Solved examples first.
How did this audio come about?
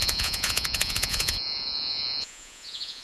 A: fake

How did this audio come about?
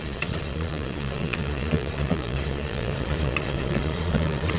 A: fake